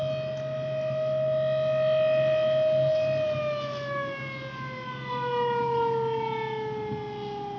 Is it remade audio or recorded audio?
recorded